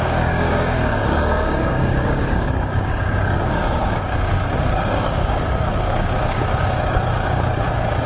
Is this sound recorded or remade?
remade